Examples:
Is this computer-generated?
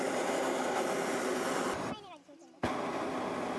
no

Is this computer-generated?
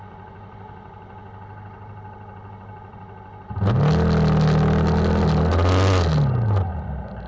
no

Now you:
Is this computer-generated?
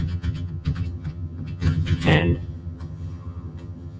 yes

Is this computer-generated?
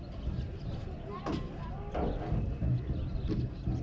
no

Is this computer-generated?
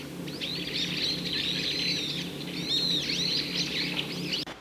no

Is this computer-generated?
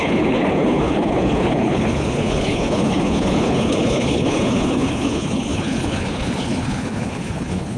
yes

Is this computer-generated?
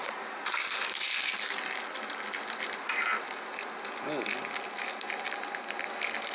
no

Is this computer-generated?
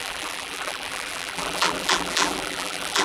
yes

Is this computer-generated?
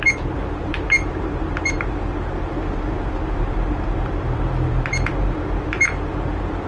yes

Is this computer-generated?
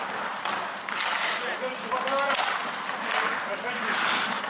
no